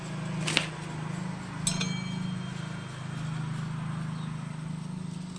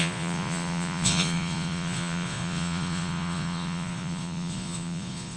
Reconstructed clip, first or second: second